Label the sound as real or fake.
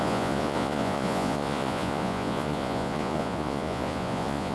fake